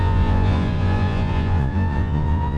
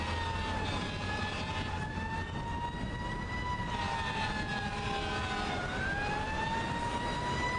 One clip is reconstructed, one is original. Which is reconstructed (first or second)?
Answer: first